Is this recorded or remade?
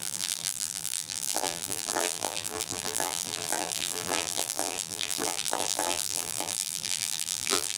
remade